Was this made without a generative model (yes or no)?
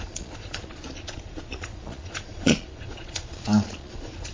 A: no